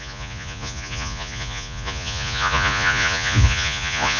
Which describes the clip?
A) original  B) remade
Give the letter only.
B